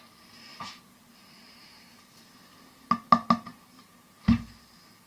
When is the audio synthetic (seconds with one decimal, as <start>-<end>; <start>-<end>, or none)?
none